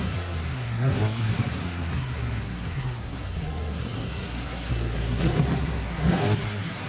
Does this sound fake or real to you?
fake